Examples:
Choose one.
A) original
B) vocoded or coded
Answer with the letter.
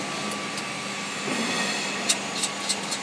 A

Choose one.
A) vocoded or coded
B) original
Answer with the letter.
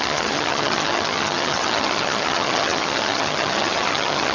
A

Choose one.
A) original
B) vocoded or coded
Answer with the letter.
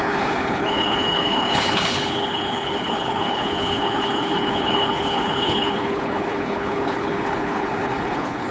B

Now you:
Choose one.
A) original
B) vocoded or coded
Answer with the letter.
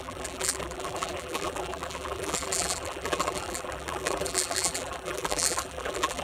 B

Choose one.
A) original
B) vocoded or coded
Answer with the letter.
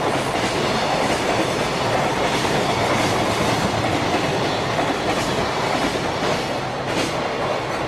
A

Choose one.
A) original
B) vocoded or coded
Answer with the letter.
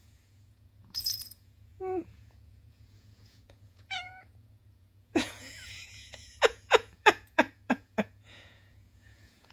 B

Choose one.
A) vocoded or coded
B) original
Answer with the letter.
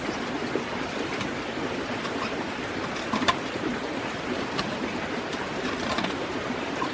B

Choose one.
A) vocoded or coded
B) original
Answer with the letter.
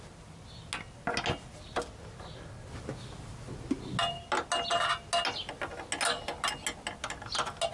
B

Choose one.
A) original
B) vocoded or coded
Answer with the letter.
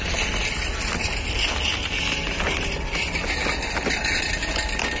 A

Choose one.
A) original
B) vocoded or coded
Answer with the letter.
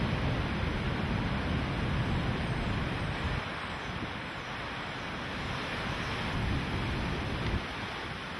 A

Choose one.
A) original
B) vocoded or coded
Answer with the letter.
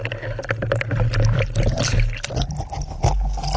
A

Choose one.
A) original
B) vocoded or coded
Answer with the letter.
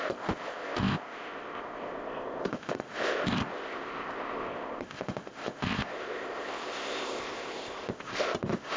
B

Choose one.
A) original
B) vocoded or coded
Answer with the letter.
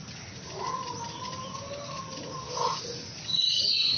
A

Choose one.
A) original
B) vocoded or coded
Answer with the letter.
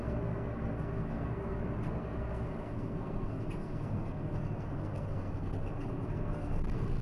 B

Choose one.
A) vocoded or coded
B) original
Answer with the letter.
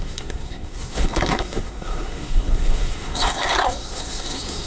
A